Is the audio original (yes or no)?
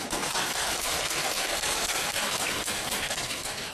no